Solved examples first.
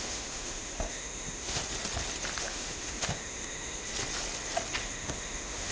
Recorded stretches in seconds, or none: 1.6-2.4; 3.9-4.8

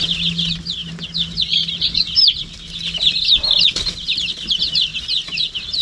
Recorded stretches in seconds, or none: 0.0-5.8